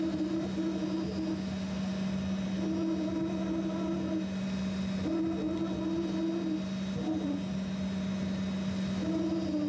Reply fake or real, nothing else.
real